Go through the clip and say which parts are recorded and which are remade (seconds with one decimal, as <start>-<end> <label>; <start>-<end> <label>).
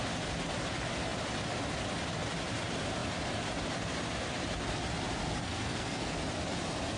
0.0-5.4 recorded; 5.4-6.2 remade; 6.2-7.0 recorded